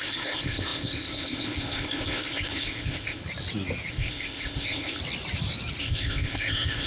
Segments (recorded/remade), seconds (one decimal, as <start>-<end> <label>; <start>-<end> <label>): 0.0-3.2 remade; 3.2-3.9 recorded; 3.9-5.0 remade; 5.0-5.8 recorded; 5.8-6.9 remade